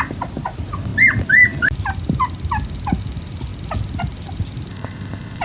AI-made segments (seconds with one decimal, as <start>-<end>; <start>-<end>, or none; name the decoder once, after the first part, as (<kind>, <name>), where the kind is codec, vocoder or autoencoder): 4.7-5.4 (codec, ZipCodec)